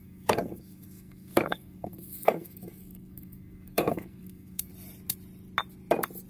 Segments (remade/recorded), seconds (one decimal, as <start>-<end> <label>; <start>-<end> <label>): 0.0-4.7 remade; 4.7-6.3 recorded